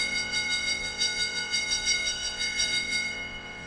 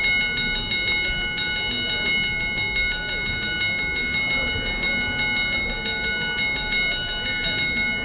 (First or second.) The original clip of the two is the second